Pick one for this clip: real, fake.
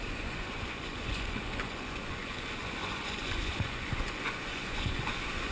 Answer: fake